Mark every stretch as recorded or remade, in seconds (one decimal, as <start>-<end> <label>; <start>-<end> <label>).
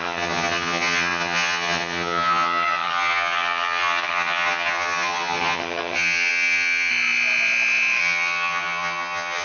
0.0-6.9 remade; 6.9-8.0 recorded; 8.0-9.4 remade